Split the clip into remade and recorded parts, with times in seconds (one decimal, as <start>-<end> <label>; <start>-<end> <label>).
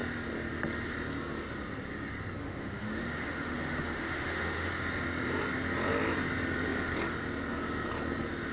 0.0-2.4 recorded; 2.4-4.7 remade; 4.7-8.5 recorded